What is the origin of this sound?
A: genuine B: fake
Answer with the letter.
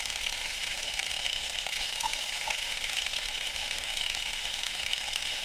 B